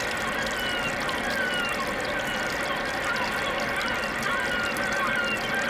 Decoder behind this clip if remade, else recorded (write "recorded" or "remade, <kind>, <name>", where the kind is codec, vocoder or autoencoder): recorded